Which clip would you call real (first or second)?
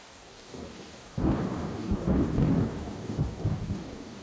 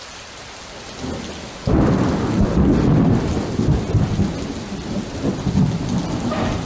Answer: second